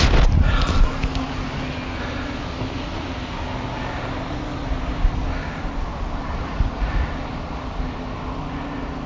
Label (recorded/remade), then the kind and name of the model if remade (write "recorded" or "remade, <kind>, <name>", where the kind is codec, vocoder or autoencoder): recorded